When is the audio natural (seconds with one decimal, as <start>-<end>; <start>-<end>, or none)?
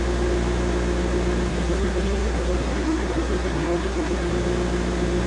0.0-1.5; 4.3-5.3